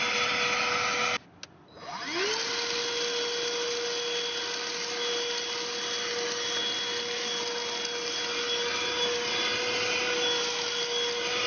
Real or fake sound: real